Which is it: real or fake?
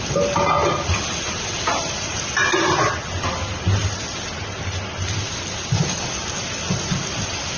real